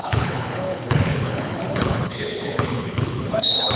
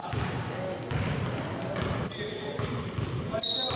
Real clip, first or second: second